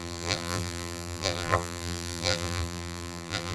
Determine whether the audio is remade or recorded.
remade